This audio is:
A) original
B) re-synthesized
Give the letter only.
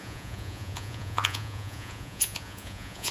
B